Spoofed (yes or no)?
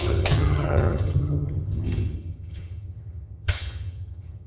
yes